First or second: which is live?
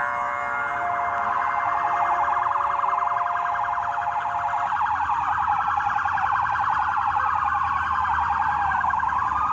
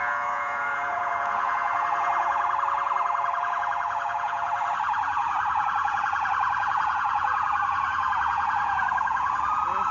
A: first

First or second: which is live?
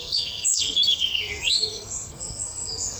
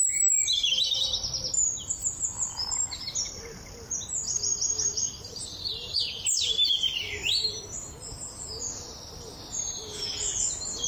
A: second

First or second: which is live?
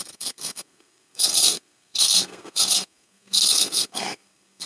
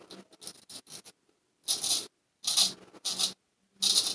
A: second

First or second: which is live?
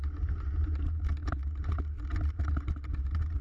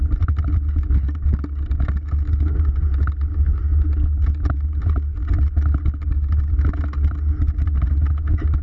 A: second